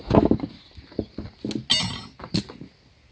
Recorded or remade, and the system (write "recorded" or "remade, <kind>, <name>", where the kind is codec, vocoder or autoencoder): recorded